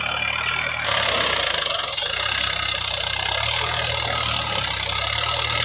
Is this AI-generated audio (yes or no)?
no